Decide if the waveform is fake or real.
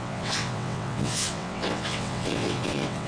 fake